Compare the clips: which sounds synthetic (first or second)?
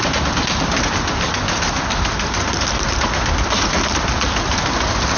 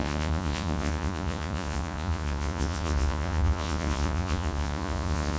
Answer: second